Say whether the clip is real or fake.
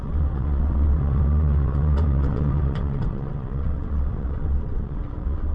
fake